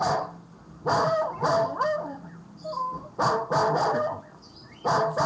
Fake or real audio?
real